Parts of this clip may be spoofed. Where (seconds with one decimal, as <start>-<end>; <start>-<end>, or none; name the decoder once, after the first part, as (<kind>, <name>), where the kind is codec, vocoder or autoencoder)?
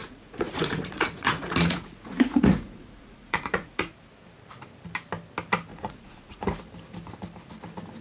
0.0-3.9 (vocoder, Vocos); 5.7-6.6